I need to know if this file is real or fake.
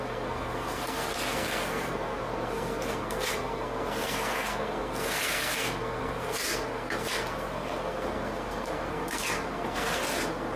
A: fake